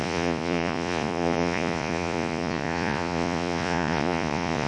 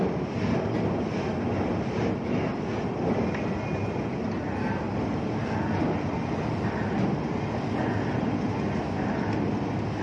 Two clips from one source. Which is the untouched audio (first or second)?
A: second